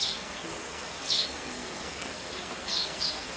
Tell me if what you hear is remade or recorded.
remade